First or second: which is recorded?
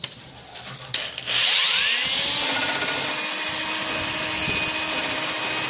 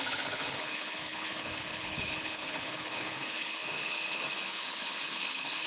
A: first